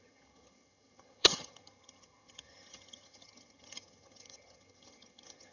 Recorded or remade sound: remade